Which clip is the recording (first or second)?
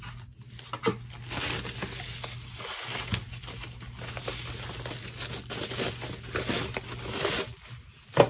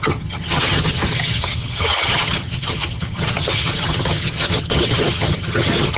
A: first